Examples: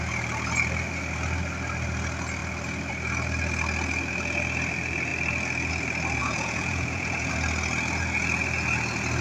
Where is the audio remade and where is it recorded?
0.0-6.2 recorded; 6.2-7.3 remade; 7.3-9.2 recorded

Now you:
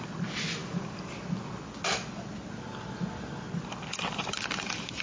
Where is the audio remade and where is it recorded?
0.0-5.0 recorded

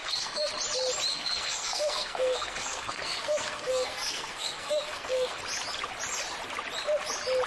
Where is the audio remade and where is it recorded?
0.0-0.5 remade; 0.5-1.1 recorded; 1.1-5.4 remade; 5.4-7.5 recorded

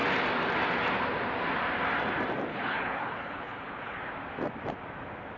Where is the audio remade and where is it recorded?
0.0-2.5 recorded; 2.5-4.0 remade; 4.0-5.4 recorded

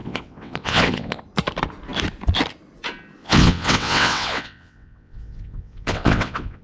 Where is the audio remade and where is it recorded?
0.0-1.2 remade; 1.2-3.2 recorded; 3.2-6.6 remade

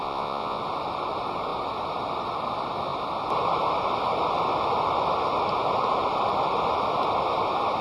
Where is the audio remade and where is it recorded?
0.0-0.6 remade; 0.6-7.8 recorded

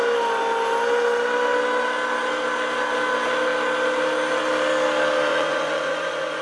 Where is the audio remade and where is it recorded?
0.0-5.3 recorded; 5.3-6.4 remade

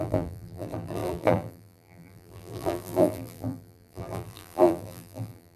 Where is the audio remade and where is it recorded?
0.0-5.6 remade